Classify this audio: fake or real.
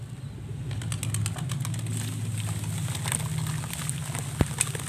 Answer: real